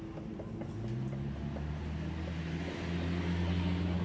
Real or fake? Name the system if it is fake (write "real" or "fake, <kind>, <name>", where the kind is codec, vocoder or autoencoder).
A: real